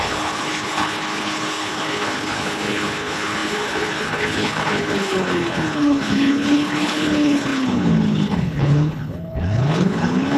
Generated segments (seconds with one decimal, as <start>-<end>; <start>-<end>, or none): 0.0-10.4